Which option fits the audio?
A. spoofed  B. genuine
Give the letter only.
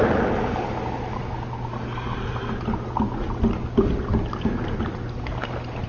B